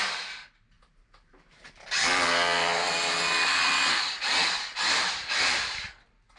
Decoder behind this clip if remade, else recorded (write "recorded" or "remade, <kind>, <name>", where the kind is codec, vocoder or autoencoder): recorded